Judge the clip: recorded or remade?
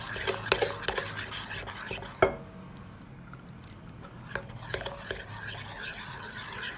recorded